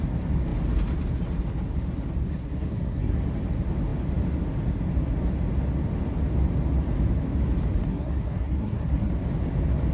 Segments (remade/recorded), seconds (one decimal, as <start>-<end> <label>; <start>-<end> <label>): 0.0-2.3 recorded; 2.3-3.2 remade; 3.2-7.9 recorded; 7.9-9.1 remade; 9.1-9.9 recorded